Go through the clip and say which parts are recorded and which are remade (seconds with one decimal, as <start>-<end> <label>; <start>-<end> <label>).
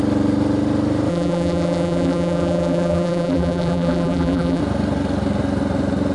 0.0-1.1 recorded; 1.1-4.6 remade; 4.6-6.1 recorded